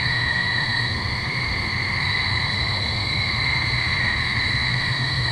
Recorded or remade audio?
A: remade